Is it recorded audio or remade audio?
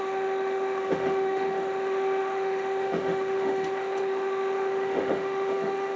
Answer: remade